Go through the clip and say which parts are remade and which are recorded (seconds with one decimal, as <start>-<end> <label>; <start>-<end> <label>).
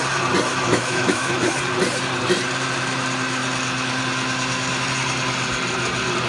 0.0-0.5 recorded; 0.5-1.5 remade; 1.5-6.3 recorded